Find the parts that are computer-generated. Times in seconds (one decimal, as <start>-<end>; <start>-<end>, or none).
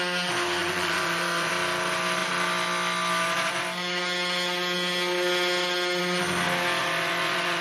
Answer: 0.6-1.5; 6.8-7.6